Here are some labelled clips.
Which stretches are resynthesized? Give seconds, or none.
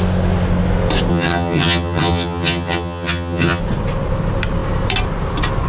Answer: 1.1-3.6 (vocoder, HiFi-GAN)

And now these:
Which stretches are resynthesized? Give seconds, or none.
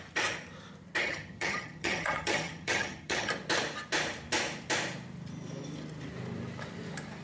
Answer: 1.0-3.3 (vocoder, HiFi-GAN)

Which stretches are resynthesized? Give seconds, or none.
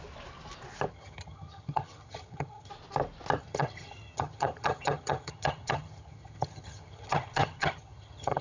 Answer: 0.9-2.7 (vocoder, HiFi-GAN); 3.4-8.4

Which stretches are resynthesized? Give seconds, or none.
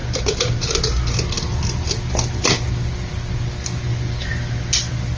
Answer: none